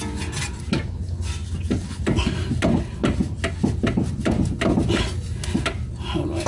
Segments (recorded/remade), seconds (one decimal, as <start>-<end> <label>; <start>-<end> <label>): 0.0-6.5 recorded